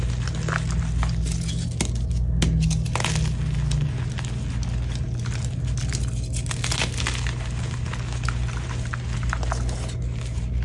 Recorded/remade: recorded